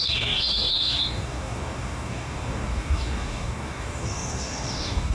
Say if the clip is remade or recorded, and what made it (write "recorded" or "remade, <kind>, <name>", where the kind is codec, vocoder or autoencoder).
remade, codec, DAC